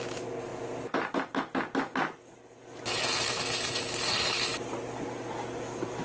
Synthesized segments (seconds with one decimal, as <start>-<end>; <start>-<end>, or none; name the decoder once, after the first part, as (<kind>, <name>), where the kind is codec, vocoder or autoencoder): none